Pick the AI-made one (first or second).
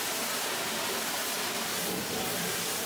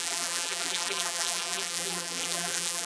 second